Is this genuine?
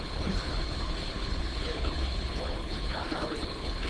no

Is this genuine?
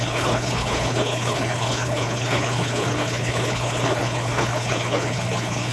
no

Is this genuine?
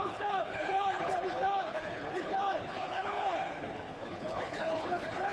no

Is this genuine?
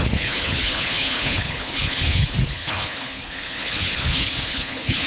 no